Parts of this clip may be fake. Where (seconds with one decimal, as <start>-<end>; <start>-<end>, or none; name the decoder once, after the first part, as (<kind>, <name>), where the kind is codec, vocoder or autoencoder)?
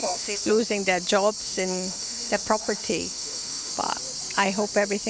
0.0-0.5 (autoencoder, DAC-VAE); 1.4-3.7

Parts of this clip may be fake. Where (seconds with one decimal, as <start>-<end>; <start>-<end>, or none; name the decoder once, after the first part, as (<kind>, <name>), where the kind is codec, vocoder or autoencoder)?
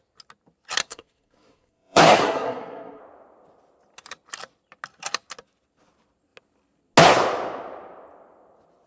0.8-3.0 (codec, SNAC)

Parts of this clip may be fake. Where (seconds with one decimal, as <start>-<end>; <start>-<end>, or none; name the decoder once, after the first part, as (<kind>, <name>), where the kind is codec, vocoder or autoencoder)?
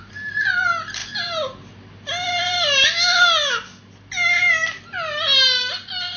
none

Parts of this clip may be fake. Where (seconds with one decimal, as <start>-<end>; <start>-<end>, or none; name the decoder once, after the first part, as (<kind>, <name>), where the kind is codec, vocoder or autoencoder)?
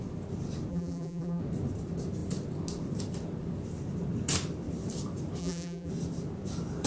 0.7-1.4 (vocoder, BigVGAN v2); 5.4-5.9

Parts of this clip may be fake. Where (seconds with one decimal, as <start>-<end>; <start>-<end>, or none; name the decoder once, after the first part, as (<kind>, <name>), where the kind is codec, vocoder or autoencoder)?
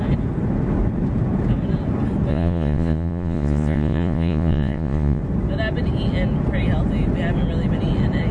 2.3-5.2 (vocoder, Vocos)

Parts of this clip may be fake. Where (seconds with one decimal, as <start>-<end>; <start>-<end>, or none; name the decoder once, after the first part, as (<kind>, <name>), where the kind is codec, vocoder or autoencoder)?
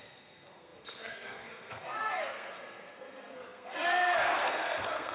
0.0-5.1 (codec, SNAC)